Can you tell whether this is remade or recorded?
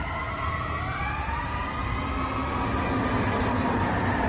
recorded